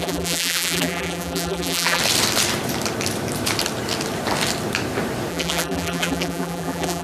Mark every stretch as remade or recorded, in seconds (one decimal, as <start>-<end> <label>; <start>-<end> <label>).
0.0-2.0 remade; 2.0-5.3 recorded; 5.3-7.0 remade